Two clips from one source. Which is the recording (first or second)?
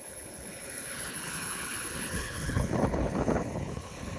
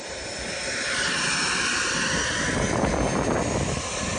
second